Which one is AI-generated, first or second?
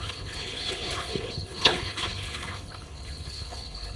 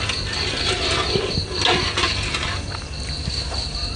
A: first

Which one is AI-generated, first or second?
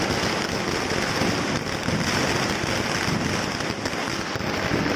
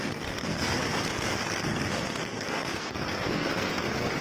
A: second